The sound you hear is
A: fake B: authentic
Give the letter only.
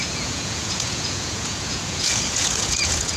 A